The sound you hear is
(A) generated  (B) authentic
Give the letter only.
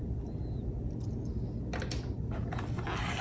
B